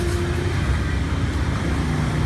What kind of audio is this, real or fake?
real